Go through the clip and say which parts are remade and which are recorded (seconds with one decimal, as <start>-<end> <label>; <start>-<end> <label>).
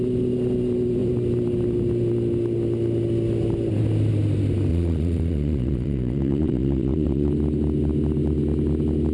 0.0-4.7 recorded; 4.7-7.3 remade; 7.3-9.1 recorded